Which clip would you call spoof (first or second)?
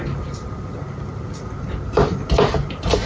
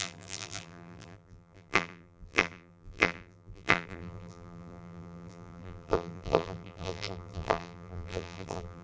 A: second